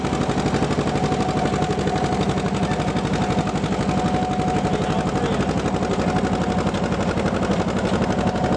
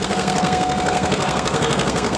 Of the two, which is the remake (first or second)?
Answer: second